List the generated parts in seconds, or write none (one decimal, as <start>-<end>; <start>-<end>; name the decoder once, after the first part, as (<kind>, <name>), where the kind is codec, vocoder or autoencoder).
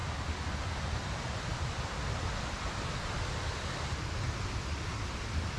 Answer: none